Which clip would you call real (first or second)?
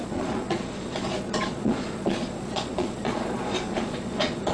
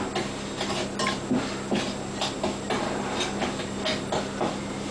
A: second